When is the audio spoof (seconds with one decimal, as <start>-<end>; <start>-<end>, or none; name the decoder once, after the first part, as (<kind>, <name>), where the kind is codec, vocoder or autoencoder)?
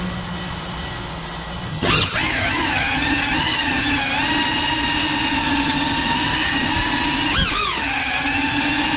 1.7-4.0 (vocoder, HiFi-GAN); 5.4-6.7; 7.7-8.6